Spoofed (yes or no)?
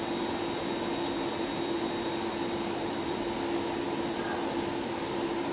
no